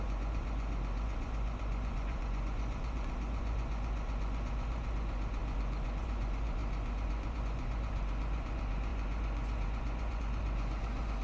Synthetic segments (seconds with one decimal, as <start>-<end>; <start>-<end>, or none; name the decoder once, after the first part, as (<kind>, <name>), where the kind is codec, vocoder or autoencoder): 0.0-11.2 (vocoder, Vocos)